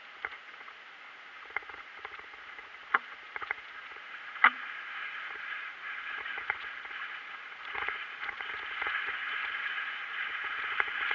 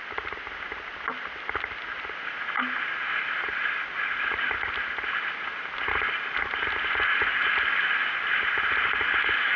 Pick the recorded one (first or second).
second